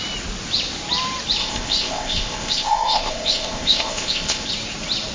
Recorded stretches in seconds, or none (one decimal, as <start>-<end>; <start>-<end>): 0.0-1.4; 4.5-5.1